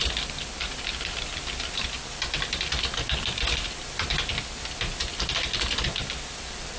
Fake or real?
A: real